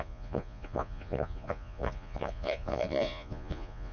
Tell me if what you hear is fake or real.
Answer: fake